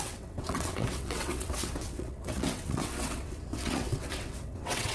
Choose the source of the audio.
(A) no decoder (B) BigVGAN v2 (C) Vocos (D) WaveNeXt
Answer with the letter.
D